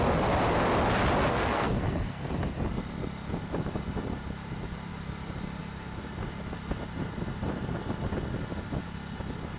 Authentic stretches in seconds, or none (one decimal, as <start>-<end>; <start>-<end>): 0.0-1.3; 2.3-9.6